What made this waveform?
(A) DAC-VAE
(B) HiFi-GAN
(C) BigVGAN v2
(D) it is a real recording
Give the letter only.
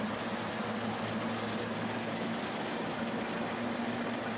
D